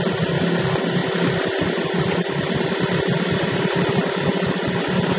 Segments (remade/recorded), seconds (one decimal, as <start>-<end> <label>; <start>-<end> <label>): 0.0-5.2 recorded